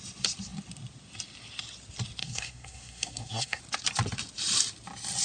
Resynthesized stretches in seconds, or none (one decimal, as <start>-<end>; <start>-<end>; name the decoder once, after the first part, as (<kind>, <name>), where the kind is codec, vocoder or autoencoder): 2.2-3.6 (codec, SNAC)